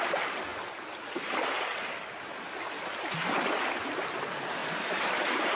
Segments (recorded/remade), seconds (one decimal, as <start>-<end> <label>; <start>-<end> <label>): 0.0-4.6 recorded; 4.6-5.6 remade